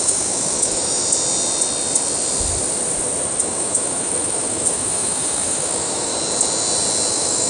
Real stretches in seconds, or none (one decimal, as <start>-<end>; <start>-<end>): 1.0-3.4; 6.1-7.1